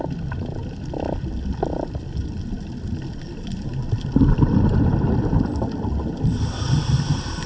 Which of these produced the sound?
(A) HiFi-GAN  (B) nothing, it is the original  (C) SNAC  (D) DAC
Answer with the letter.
B